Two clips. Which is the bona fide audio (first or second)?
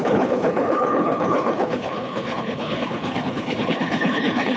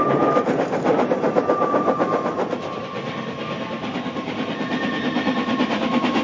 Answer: second